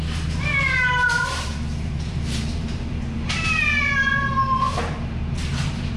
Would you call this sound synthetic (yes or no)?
yes